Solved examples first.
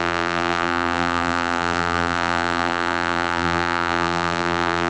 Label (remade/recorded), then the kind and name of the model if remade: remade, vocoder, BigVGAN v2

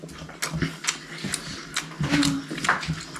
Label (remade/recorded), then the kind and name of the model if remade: recorded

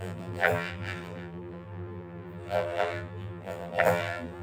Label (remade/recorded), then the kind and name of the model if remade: remade, vocoder, BigVGAN v2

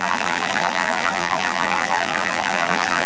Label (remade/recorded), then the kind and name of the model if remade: remade, vocoder, BigVGAN v2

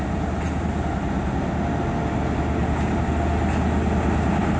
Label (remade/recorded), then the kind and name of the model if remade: recorded